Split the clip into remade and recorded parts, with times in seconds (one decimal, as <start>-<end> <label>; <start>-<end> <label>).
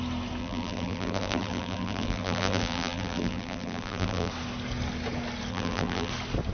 0.0-0.4 recorded; 0.4-4.3 remade; 4.3-5.5 recorded; 5.5-6.1 remade; 6.1-6.5 recorded